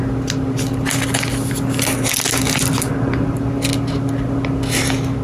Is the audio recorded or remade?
recorded